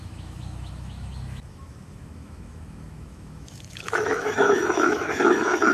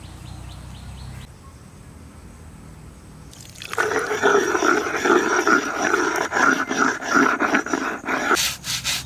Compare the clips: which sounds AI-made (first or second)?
first